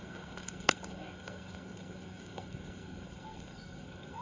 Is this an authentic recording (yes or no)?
no